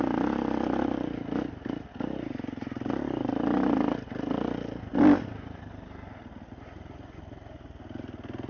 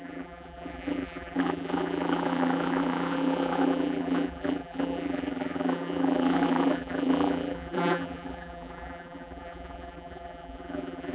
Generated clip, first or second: second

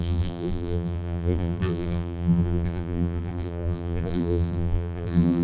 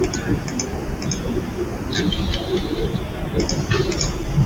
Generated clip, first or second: first